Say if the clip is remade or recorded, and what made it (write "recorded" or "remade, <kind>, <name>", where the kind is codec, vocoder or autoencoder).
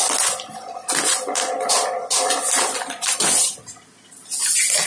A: recorded